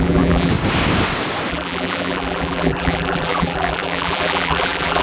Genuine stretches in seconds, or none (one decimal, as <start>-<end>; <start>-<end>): 0.5-1.5